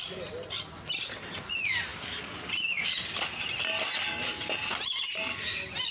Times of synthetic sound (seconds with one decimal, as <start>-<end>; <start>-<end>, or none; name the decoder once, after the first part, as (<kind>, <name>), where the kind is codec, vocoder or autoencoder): none